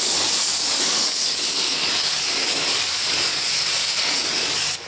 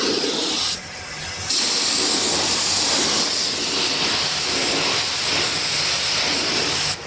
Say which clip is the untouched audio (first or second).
second